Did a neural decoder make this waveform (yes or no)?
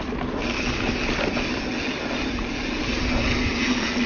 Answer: no